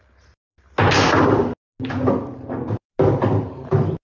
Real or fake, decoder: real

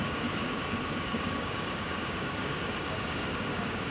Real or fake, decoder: fake, codec, DAC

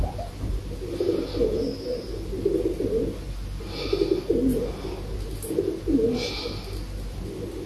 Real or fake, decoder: real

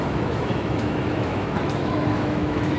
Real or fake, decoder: fake, autoencoder, DAC-VAE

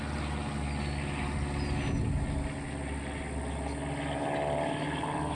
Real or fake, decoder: real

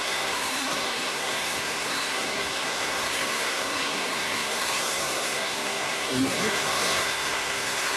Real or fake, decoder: fake, codec, SNAC